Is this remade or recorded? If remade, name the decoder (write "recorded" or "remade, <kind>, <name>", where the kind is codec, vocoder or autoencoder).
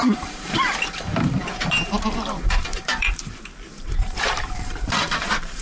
remade, vocoder, BigVGAN v2